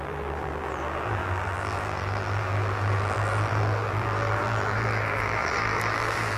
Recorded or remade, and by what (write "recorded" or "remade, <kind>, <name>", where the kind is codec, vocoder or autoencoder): remade, vocoder, BigVGAN v2